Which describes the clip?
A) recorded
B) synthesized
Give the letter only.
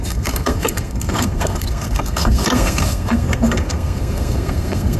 B